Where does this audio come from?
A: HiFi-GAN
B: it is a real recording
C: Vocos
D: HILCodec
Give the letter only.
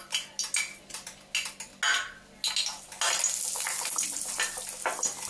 B